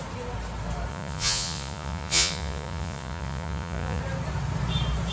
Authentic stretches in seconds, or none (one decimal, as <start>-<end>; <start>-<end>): 0.0-0.9; 4.0-5.1